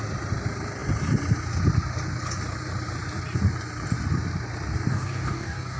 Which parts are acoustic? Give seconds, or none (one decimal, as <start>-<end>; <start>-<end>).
0.0-4.9